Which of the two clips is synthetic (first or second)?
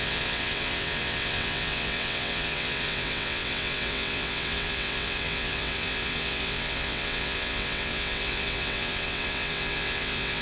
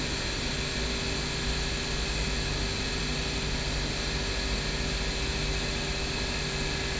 first